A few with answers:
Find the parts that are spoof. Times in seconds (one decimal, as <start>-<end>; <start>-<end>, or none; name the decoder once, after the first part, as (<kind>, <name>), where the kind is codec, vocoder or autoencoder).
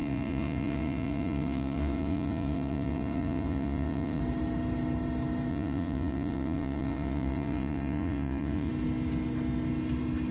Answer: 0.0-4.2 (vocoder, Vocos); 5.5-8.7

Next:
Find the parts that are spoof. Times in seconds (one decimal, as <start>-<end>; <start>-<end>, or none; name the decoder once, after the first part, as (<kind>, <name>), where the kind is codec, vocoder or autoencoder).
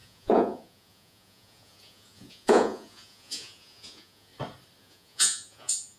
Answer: 0.0-4.3 (vocoder, Vocos); 4.8-6.0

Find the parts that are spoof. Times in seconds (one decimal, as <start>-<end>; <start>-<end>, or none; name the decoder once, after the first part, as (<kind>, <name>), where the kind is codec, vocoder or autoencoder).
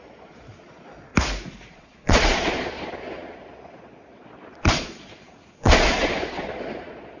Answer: 0.0-1.1 (vocoder, Vocos); 1.7-7.2